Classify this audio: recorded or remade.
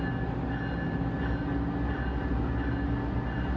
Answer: recorded